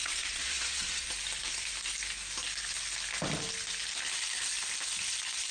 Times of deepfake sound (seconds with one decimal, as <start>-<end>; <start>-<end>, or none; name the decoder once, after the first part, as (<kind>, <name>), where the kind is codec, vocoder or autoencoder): 0.0-1.1 (vocoder, WaveNeXt)